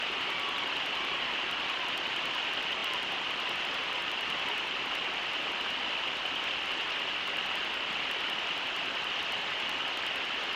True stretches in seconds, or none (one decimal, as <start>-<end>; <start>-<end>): 0.0-2.8; 3.5-10.6